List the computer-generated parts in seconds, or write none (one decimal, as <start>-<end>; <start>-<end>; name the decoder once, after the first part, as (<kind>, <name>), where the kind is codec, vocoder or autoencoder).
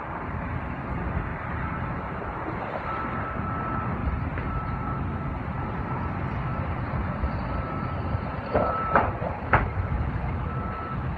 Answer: 4.0-6.0 (vocoder, BigVGAN v2); 6.5-9.2